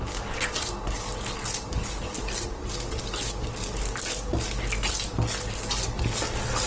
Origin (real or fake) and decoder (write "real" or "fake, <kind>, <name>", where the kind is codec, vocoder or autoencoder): real